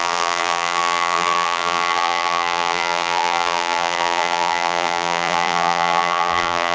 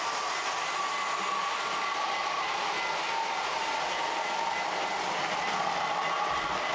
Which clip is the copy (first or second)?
first